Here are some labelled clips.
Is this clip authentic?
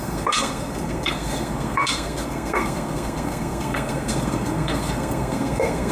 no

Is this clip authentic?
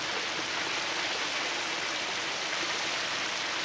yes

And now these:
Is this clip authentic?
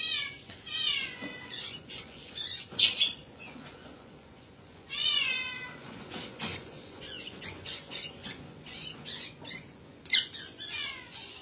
no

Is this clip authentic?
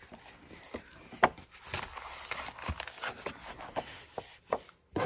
yes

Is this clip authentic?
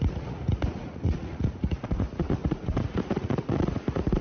no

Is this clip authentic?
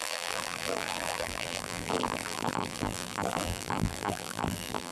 no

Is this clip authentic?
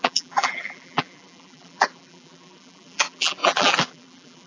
no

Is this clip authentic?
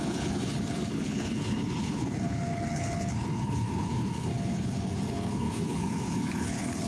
no